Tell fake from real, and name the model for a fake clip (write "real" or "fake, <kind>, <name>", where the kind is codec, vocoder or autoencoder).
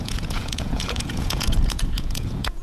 fake, vocoder, Vocos